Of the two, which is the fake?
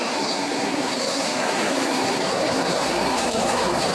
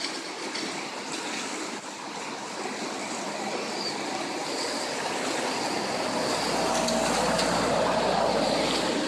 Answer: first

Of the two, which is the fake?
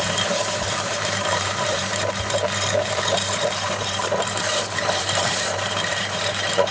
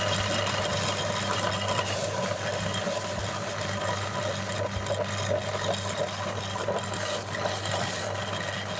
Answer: first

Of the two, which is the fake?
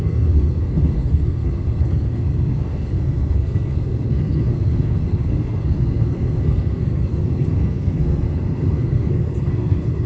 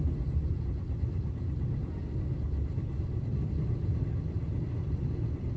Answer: first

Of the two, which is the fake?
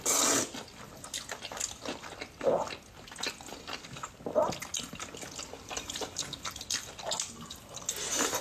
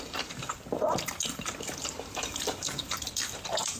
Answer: second